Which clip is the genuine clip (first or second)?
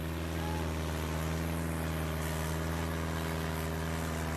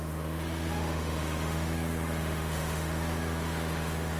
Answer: first